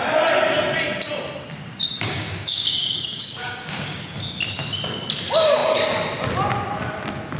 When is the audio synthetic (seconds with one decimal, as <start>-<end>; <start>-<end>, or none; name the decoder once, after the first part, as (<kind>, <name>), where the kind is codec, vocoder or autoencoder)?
1.9-4.1 (codec, DAC)